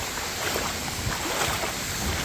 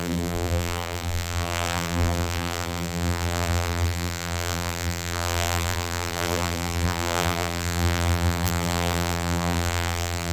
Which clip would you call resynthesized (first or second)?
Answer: second